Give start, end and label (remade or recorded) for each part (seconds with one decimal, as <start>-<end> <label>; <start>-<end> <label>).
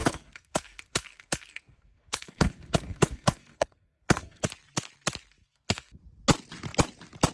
0.0-4.4 remade; 4.4-5.4 recorded; 5.4-6.0 remade; 6.0-7.3 recorded